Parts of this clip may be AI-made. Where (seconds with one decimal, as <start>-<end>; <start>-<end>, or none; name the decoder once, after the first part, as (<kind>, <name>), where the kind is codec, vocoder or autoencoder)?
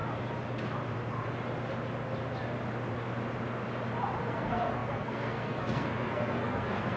4.2-7.0 (codec, SNAC)